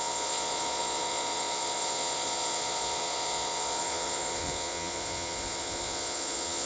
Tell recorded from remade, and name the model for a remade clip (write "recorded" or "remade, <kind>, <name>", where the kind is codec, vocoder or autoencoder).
remade, vocoder, Vocos